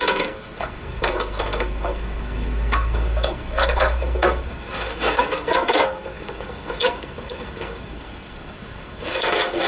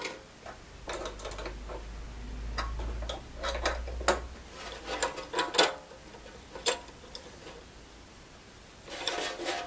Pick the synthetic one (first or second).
first